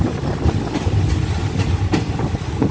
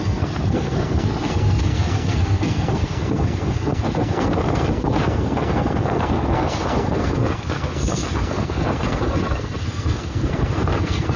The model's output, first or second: second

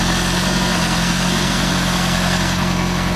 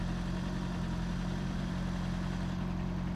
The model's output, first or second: first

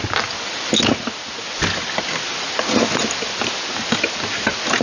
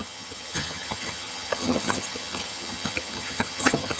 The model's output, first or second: second